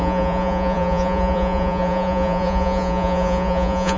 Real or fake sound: fake